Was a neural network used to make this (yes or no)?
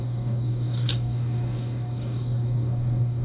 yes